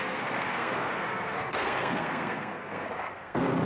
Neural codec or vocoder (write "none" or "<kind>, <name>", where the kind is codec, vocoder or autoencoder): codec, SNAC